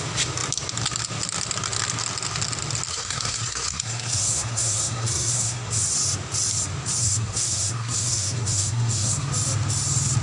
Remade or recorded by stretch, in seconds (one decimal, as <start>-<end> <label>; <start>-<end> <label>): 0.0-2.9 recorded; 2.9-5.7 remade; 5.7-7.0 recorded; 7.0-9.3 remade; 9.3-10.2 recorded